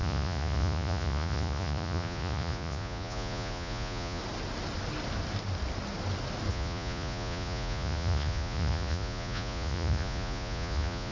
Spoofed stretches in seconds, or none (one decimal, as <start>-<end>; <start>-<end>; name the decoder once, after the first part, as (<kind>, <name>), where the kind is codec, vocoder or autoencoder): 0.0-4.2 (vocoder, Vocos); 6.5-11.1